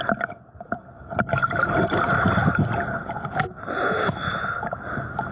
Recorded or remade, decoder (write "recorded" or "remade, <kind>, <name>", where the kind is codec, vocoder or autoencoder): recorded